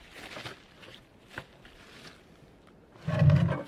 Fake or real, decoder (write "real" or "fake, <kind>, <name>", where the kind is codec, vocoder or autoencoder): real